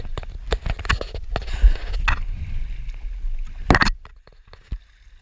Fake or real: real